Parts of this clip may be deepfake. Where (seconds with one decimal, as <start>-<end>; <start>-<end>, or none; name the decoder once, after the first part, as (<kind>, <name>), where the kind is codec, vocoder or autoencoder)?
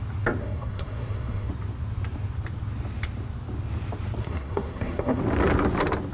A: 0.4-1.5 (codec, SNAC); 4.2-5.2